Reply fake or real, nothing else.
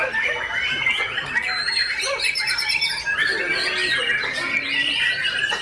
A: real